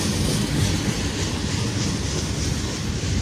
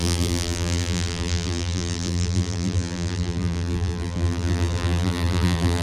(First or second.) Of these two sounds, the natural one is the first